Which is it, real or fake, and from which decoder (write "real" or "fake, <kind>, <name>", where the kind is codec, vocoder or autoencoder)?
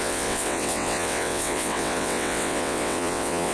fake, vocoder, WaveNeXt